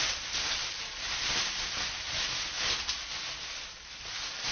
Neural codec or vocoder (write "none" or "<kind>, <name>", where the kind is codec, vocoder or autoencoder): none